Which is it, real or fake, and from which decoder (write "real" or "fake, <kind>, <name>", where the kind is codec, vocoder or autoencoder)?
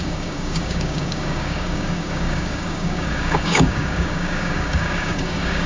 fake, codec, DAC